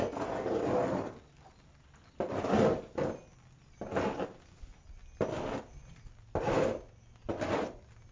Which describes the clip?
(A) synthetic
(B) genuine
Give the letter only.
B